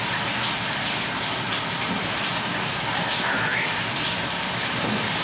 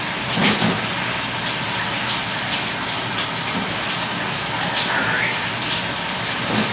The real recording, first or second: second